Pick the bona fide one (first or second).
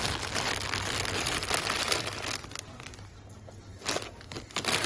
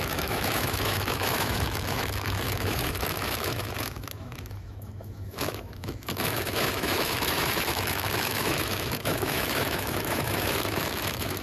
first